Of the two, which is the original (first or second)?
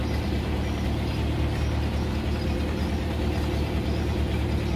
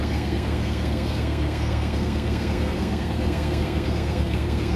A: first